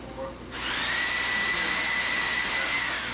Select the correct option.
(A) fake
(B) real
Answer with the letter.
B